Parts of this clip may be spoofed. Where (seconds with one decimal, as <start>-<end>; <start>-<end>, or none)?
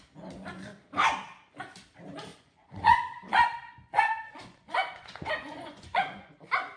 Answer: 2.3-6.3